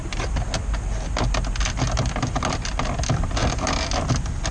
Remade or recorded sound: recorded